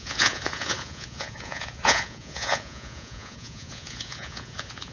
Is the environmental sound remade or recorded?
remade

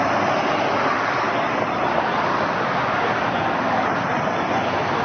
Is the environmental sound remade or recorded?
recorded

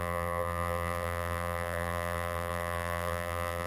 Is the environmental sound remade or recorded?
remade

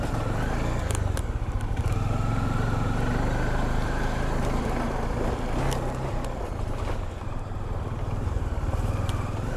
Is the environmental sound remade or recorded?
recorded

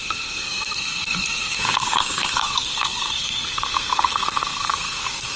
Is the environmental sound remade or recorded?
remade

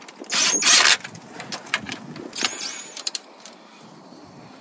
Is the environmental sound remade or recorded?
recorded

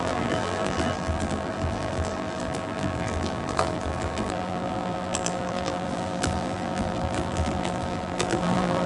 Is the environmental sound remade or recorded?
remade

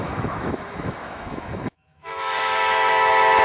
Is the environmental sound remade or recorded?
remade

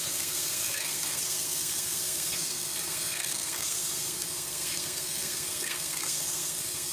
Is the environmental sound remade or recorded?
remade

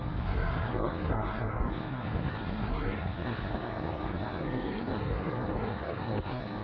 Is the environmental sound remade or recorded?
remade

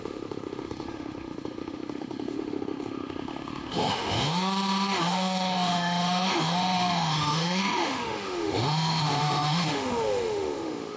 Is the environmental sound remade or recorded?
remade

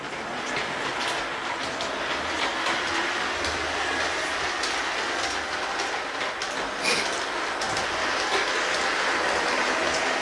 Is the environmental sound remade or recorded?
recorded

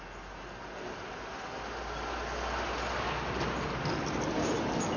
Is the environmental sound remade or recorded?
recorded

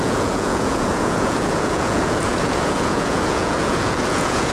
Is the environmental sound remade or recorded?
remade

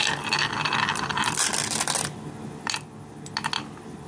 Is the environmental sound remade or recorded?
recorded